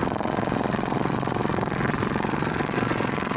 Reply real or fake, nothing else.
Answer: fake